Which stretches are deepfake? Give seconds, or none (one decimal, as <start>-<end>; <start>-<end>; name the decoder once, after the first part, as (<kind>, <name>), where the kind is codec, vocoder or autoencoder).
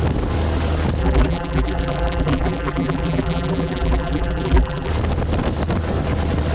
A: 1.0-4.9 (vocoder, BigVGAN v2)